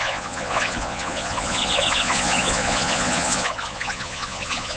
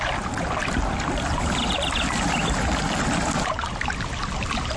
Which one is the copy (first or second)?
first